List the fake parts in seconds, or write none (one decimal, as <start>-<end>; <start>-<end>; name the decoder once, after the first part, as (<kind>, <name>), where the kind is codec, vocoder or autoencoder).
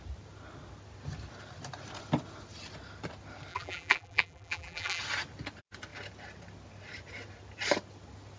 3.5-5.0 (vocoder, BigVGAN v2)